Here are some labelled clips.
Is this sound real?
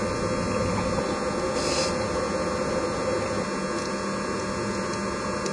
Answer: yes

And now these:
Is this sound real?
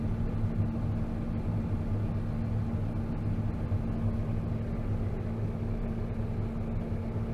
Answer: yes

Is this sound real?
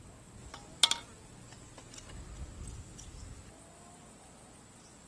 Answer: yes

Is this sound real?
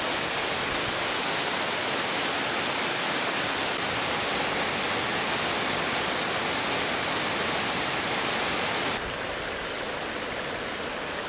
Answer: yes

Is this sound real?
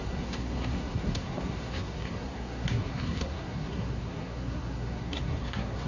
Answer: no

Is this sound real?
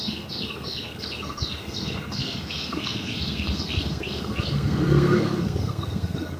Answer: no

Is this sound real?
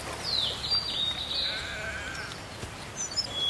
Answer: yes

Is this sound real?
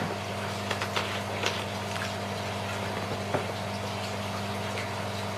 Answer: yes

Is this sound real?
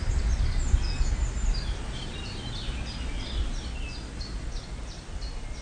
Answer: yes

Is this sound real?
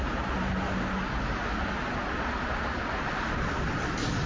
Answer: yes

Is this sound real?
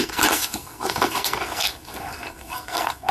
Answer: no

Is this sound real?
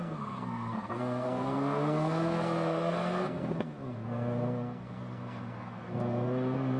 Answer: no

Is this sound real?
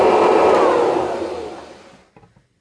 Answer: yes